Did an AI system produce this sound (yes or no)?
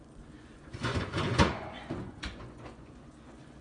yes